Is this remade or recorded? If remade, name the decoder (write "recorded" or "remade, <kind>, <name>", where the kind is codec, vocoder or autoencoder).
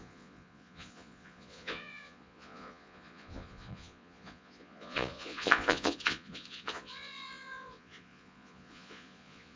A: remade, vocoder, Vocos